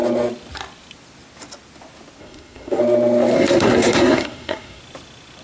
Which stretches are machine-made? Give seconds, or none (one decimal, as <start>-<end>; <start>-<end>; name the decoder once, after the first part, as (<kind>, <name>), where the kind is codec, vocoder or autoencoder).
2.2-2.8 (codec, SNAC); 3.3-4.8